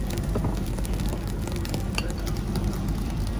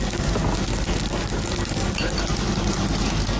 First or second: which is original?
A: second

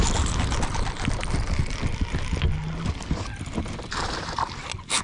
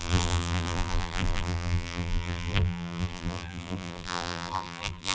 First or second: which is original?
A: first